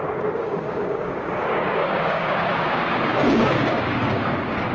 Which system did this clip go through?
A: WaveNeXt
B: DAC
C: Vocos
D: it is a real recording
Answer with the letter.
B